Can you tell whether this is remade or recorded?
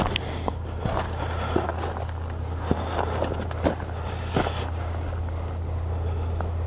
recorded